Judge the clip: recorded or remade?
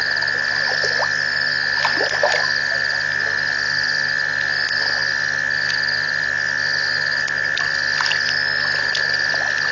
recorded